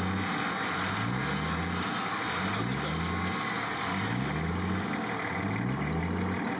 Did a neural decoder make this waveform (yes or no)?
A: no